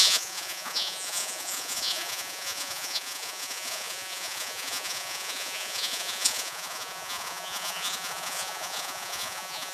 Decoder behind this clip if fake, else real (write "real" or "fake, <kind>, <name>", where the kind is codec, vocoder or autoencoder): fake, vocoder, Vocos